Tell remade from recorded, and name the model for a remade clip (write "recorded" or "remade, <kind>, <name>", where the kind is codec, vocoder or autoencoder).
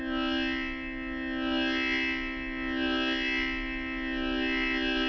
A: recorded